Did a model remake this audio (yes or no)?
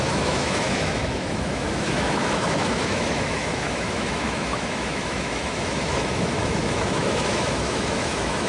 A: yes